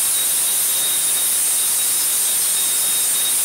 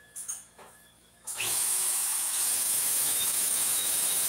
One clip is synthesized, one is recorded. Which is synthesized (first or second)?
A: second